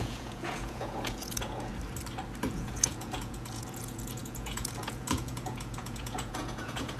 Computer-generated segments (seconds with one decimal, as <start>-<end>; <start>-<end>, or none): 0.0-1.7; 2.5-7.0